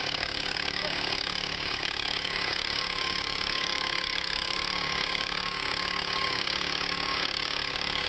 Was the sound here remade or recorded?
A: remade